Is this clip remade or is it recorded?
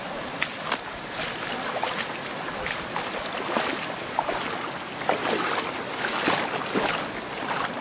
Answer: recorded